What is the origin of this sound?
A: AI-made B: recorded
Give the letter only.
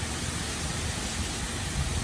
B